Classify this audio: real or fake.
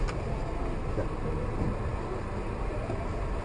real